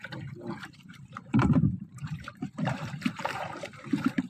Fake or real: fake